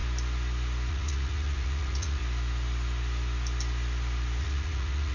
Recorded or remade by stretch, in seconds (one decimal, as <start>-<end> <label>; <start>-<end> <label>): 0.0-0.9 recorded; 0.9-2.2 remade; 2.2-4.4 recorded; 4.4-5.1 remade